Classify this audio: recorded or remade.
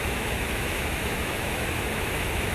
remade